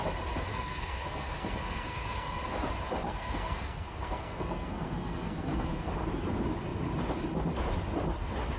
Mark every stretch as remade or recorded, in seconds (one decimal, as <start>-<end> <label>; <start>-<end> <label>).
0.0-0.5 recorded; 0.5-2.4 remade; 2.4-3.0 recorded; 3.0-5.9 remade; 5.9-8.6 recorded